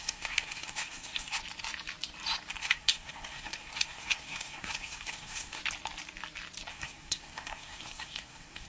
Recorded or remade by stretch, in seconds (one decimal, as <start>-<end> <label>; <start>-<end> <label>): 0.0-1.4 remade; 1.4-2.6 recorded; 2.6-5.6 remade; 5.6-6.7 recorded; 6.7-8.7 remade